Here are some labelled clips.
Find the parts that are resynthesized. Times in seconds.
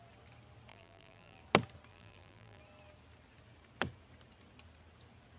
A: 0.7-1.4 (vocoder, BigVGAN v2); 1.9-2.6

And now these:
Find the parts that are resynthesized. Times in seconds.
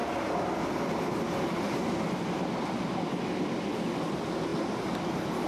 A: 0.0-0.7 (vocoder, BigVGAN v2)